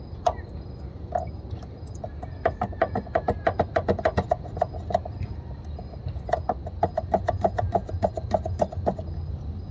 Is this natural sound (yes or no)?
yes